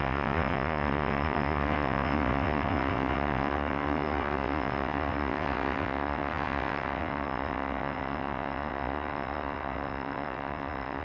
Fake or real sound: fake